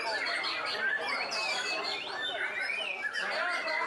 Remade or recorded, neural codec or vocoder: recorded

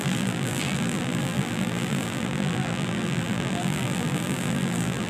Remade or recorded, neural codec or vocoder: remade, vocoder, BigVGAN v2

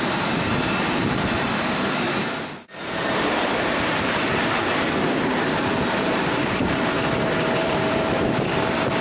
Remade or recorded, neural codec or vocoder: remade, vocoder, BigVGAN v2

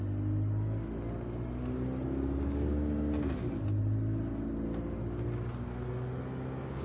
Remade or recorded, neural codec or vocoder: recorded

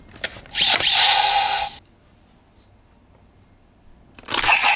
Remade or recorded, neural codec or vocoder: recorded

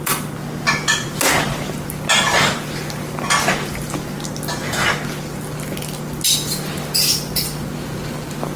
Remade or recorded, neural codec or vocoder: recorded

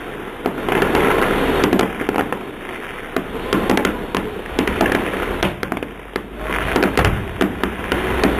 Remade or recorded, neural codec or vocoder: recorded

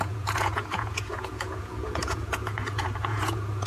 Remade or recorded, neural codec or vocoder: remade, vocoder, Vocos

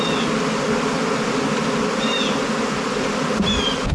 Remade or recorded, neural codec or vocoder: recorded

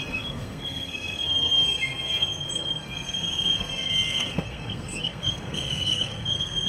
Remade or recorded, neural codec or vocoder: remade, codec, SNAC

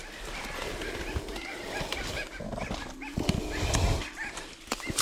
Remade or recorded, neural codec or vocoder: recorded